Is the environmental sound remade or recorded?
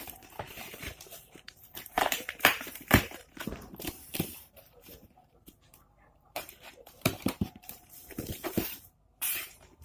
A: remade